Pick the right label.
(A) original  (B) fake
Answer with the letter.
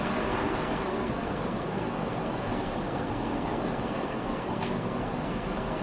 B